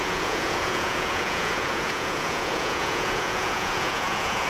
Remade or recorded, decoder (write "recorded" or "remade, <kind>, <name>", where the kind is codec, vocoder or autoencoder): remade, vocoder, Vocos